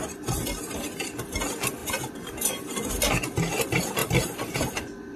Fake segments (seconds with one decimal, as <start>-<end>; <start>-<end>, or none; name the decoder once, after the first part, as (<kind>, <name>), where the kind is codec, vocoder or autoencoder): 1.8-2.3 (vocoder, BigVGAN v2); 4.0-4.8